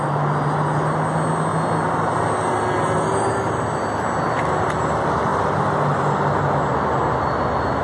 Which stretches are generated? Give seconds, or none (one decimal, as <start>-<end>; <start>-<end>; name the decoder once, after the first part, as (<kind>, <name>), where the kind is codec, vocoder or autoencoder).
none